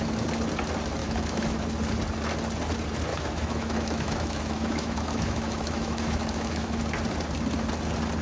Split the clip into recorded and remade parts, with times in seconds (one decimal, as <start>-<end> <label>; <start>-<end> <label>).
0.0-1.0 recorded; 1.0-1.6 remade; 1.6-3.1 recorded; 3.1-6.8 remade; 6.8-8.2 recorded